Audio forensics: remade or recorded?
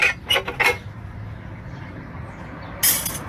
recorded